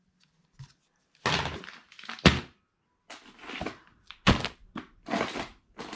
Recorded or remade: recorded